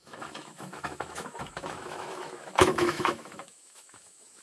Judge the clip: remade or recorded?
remade